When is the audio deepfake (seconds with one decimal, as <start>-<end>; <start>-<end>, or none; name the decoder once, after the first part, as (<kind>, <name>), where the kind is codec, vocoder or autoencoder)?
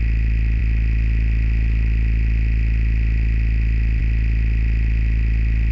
none